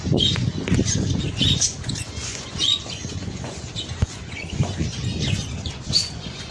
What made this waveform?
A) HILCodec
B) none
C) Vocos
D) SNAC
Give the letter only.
C